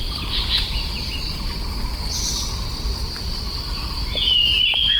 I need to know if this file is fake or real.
real